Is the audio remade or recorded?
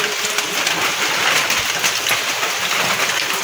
recorded